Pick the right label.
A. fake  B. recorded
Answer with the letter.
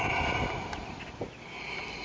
B